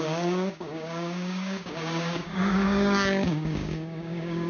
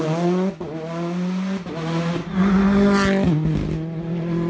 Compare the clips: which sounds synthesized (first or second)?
first